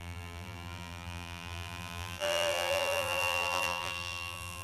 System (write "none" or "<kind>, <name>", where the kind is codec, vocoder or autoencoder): vocoder, BigVGAN v2